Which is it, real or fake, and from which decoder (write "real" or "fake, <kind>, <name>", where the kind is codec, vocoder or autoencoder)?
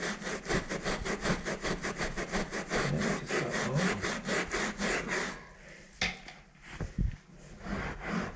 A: real